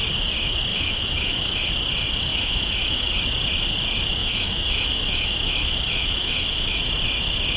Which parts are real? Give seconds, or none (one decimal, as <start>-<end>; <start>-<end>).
0.0-0.7; 1.7-2.3; 3.2-4.2; 6.8-7.6

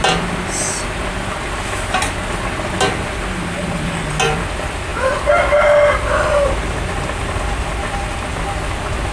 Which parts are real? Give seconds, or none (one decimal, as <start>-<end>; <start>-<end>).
0.0-9.1

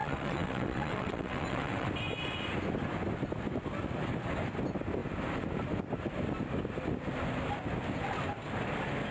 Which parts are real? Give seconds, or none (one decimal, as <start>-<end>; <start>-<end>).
1.9-9.1

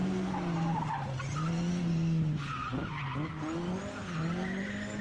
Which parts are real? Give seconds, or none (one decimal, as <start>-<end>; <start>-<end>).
0.0-5.0

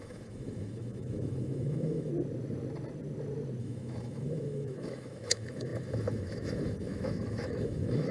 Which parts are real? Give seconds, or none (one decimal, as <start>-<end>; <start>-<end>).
2.1-3.6